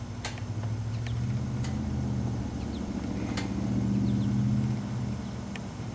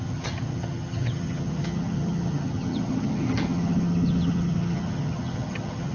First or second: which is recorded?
first